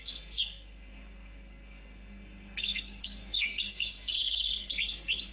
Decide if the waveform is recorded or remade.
remade